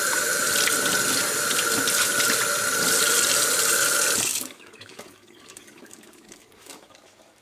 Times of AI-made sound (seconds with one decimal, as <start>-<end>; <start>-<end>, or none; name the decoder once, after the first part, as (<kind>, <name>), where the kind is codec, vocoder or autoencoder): 4.3-7.4 (codec, DAC)